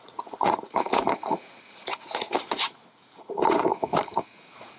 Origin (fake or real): fake